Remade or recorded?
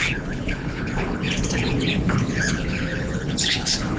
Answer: remade